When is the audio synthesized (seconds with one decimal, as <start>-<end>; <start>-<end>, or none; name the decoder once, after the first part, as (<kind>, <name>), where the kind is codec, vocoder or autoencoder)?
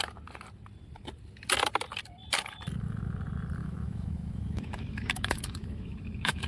3.6-6.5 (autoencoder, DAC-VAE)